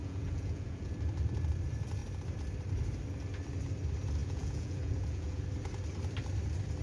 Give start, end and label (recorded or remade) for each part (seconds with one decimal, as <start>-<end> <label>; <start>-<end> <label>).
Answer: 0.0-0.9 remade; 0.9-4.2 recorded; 4.2-5.4 remade; 5.4-6.8 recorded

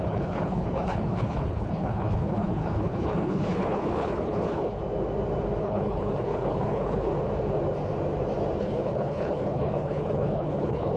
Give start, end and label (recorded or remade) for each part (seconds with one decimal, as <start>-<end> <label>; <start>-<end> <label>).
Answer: 0.0-4.8 remade; 4.8-5.6 recorded; 5.6-7.1 remade; 7.1-8.6 recorded; 8.6-11.0 remade